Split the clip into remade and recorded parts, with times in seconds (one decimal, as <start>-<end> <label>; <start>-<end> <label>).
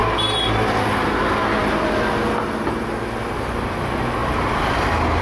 0.0-5.2 recorded